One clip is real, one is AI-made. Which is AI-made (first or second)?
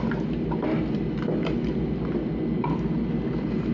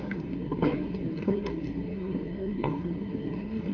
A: second